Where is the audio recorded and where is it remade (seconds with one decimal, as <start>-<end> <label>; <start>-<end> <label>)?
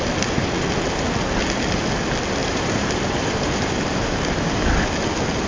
0.0-2.4 recorded; 2.4-4.8 remade; 4.8-5.5 recorded